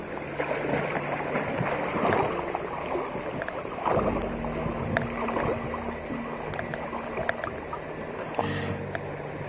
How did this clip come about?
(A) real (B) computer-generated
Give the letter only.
A